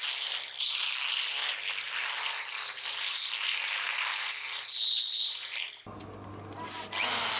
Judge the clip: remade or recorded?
recorded